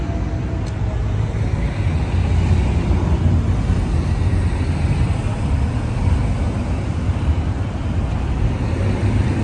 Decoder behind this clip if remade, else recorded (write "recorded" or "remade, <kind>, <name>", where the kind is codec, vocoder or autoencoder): recorded